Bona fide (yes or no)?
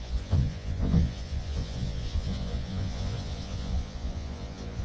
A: no